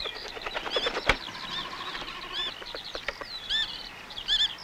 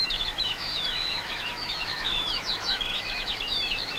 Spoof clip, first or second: second